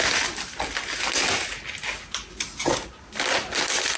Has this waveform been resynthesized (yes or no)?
no